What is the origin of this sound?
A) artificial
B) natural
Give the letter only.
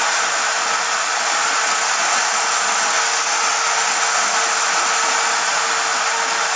B